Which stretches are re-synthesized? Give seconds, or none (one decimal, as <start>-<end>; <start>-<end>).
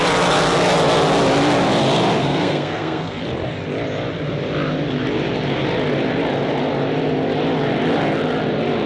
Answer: 2.2-3.2